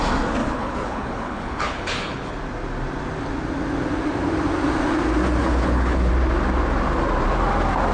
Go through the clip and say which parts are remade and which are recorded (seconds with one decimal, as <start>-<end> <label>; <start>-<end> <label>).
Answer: 0.0-0.4 recorded; 0.4-2.3 remade; 2.3-5.4 recorded; 5.4-6.1 remade; 6.1-7.9 recorded